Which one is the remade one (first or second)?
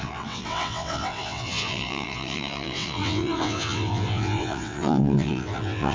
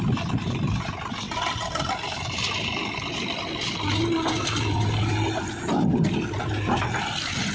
first